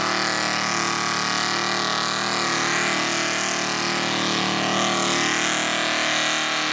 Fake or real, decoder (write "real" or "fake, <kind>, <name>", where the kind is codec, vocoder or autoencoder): real